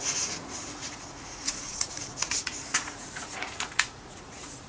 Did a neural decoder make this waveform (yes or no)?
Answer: yes